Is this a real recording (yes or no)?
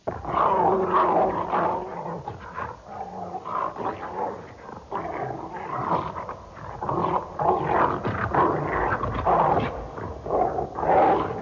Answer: yes